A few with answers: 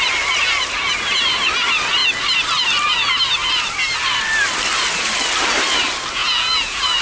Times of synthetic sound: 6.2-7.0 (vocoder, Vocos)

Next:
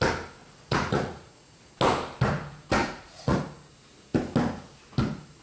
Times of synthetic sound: 0.4-1.7 (vocoder, Vocos); 2.8-3.4

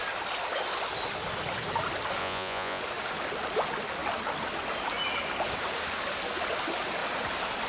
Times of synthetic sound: 2.2-2.8 (vocoder, Vocos)

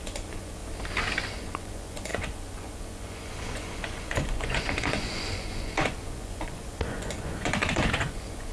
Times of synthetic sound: 0.0-0.6 (vocoder, Vocos); 1.2-8.5

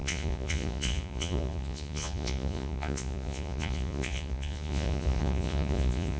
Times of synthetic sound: 0.0-6.2 (vocoder, Vocos)

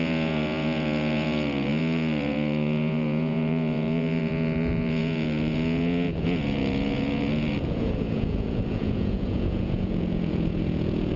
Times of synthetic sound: 0.0-11.2 (vocoder, Vocos)

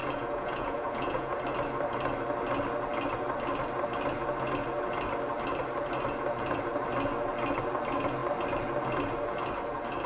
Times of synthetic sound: 0.0-1.4 (vocoder, Vocos)

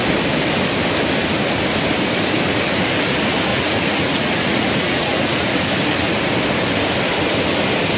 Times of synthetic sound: 3.5-5.6 (vocoder, Vocos)